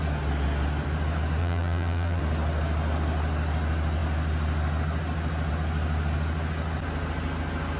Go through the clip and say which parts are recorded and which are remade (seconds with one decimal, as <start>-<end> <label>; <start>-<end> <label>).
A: 0.0-1.4 recorded; 1.4-2.2 remade; 2.2-7.8 recorded